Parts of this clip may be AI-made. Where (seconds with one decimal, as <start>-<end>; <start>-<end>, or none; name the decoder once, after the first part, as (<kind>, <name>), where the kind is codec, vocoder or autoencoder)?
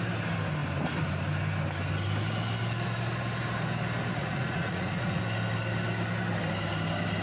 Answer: 4.2-5.2 (vocoder, Vocos)